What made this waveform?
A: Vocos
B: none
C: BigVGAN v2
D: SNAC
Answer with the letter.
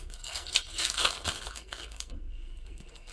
D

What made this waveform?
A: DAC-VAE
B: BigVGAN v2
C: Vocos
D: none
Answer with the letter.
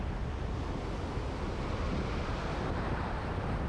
D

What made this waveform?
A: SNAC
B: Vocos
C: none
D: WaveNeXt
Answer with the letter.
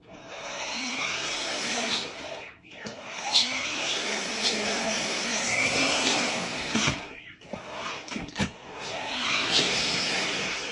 A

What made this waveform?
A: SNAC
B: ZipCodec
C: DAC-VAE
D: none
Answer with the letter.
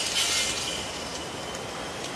D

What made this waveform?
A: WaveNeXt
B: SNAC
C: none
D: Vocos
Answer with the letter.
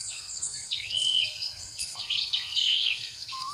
B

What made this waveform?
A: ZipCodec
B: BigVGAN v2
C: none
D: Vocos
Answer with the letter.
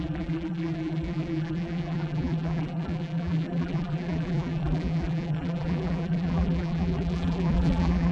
B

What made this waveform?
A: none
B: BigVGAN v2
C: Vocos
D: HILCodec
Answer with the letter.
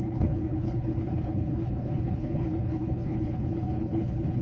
D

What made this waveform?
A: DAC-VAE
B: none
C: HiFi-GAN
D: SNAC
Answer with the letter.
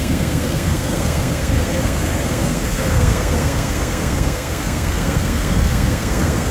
D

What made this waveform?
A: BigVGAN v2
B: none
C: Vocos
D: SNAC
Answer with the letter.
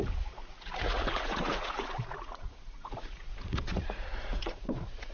C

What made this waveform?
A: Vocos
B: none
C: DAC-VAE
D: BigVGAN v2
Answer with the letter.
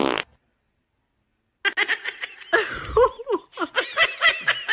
B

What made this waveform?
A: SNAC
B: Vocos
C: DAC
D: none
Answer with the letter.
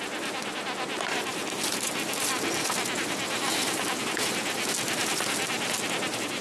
D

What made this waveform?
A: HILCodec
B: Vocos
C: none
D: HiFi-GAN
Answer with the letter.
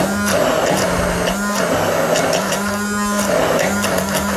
C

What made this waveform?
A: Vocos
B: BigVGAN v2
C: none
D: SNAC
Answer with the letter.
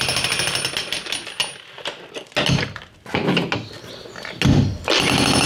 C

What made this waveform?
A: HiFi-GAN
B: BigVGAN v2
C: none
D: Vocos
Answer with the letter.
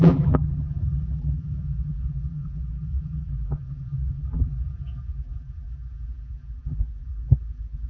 B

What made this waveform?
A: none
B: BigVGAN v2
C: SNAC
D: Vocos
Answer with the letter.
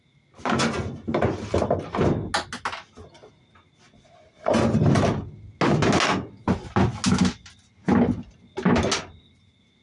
A